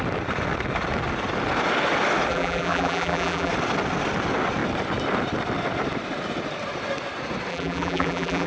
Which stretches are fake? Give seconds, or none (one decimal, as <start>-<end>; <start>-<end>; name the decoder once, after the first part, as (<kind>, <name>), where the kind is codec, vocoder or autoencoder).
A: 2.3-3.5 (vocoder, BigVGAN v2); 7.5-8.5